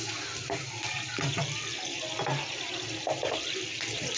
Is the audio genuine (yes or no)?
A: yes